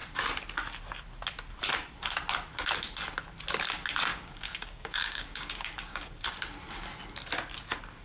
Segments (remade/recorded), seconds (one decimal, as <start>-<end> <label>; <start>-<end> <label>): 0.0-4.1 recorded; 4.1-6.2 remade; 6.2-8.0 recorded